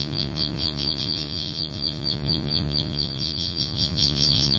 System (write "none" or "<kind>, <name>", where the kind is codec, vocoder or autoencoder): vocoder, Vocos